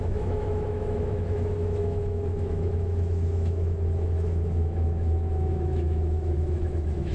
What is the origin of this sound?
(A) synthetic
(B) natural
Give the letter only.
A